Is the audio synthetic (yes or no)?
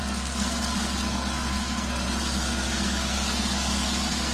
yes